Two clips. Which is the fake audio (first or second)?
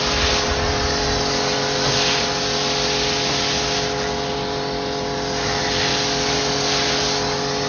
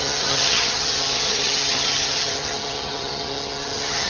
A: second